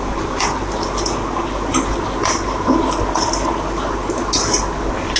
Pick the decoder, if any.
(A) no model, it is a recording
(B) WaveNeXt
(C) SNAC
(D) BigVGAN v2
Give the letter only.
A